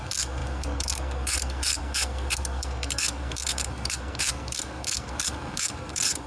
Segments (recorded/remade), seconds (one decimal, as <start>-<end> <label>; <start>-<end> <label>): 0.0-6.3 remade